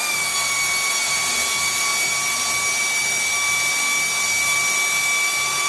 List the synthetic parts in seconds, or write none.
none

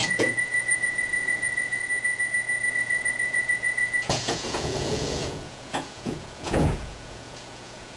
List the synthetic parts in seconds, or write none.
0.0-1.8 (vocoder, Vocos); 2.7-8.0

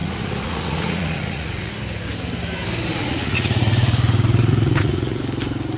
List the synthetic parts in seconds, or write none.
0.0-1.7 (vocoder, Vocos); 2.9-5.2